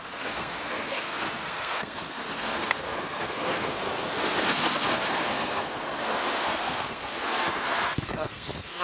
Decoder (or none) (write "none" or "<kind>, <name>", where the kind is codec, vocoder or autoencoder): codec, SNAC